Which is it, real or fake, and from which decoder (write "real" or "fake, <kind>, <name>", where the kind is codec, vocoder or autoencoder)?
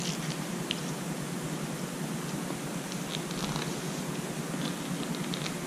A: real